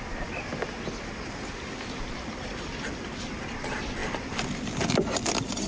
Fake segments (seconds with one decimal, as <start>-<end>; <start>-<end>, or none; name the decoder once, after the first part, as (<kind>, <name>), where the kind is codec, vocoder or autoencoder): 4.0-4.9 (vocoder, BigVGAN v2)